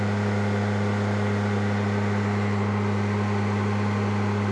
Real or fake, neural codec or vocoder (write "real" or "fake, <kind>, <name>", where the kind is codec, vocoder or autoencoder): real